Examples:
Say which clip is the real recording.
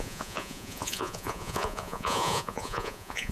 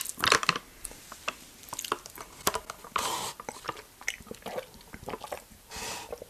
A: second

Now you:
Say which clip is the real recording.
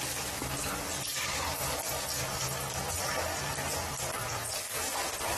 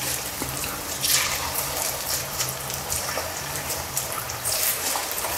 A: first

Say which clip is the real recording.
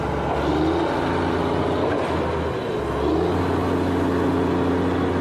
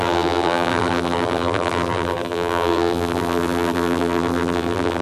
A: first